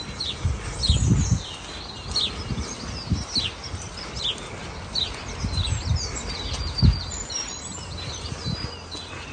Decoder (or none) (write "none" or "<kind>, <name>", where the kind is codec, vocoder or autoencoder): none